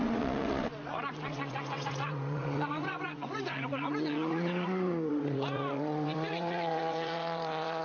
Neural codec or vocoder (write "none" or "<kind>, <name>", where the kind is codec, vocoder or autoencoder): vocoder, WaveNeXt